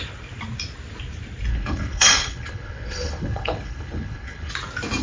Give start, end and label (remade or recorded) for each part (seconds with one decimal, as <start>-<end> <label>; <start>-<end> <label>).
0.0-1.5 recorded; 1.5-4.5 remade; 4.5-5.0 recorded